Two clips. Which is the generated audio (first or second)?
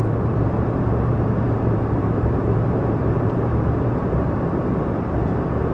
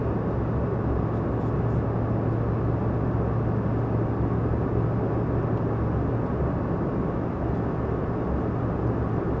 first